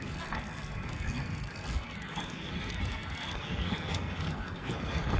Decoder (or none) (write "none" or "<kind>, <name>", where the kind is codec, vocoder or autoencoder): codec, SNAC